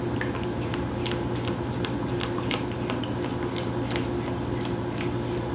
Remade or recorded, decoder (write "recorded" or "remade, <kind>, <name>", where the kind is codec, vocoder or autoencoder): recorded